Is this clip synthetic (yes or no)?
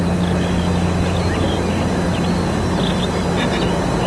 no